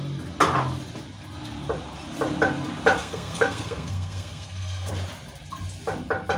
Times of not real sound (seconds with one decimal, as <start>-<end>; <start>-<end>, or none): 3.0-4.9